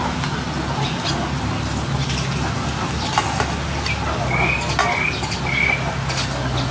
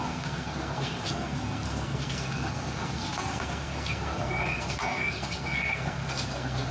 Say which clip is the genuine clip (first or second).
first